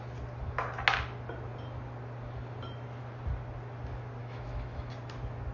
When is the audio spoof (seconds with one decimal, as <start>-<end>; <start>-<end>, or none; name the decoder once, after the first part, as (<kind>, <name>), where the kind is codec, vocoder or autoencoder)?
4.2-4.9 (autoencoder, DAC-VAE)